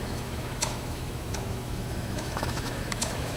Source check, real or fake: fake